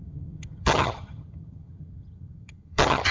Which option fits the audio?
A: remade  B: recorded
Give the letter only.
A